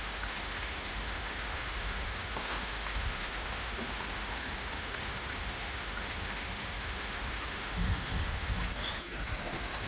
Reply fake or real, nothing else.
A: fake